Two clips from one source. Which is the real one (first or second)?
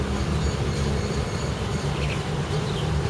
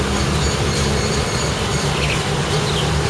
second